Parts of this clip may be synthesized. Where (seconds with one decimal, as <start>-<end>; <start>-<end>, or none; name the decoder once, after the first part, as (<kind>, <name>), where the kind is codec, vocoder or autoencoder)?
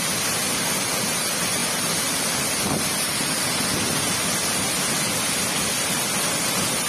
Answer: none